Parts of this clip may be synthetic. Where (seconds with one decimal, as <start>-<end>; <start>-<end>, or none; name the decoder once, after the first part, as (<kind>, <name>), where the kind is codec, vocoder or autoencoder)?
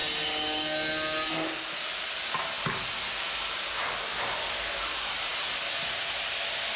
none